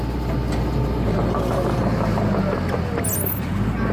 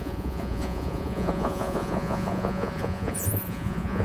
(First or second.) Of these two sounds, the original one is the first